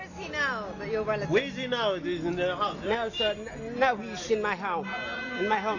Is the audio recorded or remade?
recorded